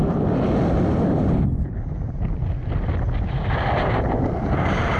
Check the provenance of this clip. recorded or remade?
recorded